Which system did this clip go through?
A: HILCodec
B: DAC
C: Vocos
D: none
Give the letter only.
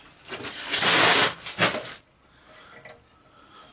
D